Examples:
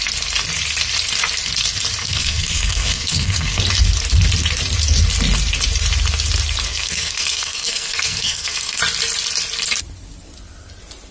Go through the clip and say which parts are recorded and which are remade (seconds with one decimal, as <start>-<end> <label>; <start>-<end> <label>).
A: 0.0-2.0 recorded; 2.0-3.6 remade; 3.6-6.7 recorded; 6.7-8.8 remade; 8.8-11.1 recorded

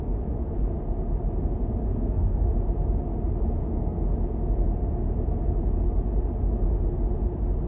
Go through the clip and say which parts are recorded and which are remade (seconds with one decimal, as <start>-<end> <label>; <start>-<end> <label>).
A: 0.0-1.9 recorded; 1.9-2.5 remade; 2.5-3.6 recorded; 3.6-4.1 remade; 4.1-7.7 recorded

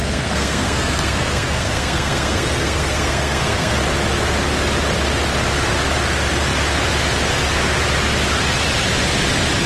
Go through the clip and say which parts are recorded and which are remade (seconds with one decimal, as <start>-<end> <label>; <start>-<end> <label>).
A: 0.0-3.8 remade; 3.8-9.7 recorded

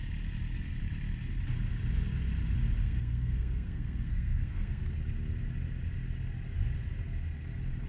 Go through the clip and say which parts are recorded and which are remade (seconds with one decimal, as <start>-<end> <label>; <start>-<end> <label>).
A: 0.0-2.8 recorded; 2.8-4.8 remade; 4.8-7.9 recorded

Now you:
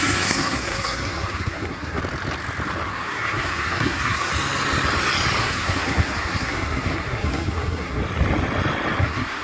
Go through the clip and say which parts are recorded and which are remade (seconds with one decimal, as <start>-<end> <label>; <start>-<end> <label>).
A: 0.0-2.0 remade; 2.0-2.9 recorded; 2.9-4.3 remade; 4.3-5.4 recorded; 5.4-8.0 remade; 8.0-9.0 recorded; 9.0-9.4 remade

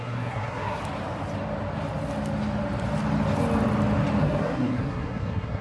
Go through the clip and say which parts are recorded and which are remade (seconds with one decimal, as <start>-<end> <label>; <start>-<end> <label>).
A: 0.0-0.8 remade; 0.8-4.2 recorded; 4.2-5.6 remade